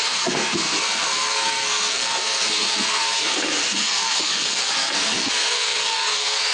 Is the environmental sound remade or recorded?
remade